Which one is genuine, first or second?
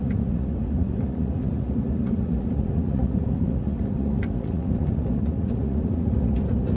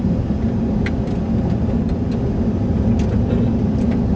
second